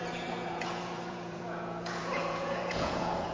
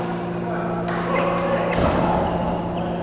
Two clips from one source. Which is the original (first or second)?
second